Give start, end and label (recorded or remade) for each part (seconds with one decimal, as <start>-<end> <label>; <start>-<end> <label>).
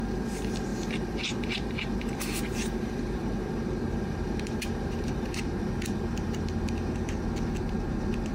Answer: 0.0-0.7 recorded; 0.7-5.7 remade; 5.7-8.3 recorded